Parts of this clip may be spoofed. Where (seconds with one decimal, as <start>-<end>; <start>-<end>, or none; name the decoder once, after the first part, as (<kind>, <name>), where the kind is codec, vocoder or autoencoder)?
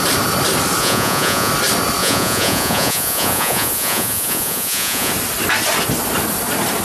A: 0.8-1.5 (vocoder, Vocos); 2.0-5.1